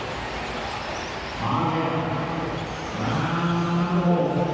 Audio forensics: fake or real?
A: real